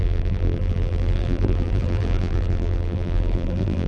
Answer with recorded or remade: remade